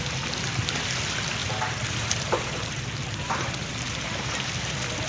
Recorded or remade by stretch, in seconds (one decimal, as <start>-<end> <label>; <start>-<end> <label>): 0.0-1.4 recorded; 1.4-4.5 remade; 4.5-5.1 recorded